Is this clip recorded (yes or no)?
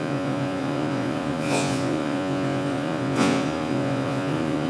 no